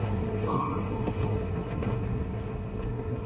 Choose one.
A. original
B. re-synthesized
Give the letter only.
B